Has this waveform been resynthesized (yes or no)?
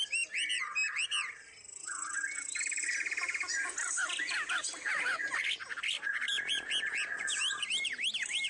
no